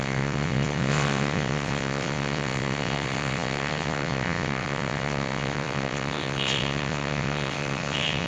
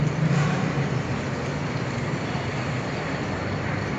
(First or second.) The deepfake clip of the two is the first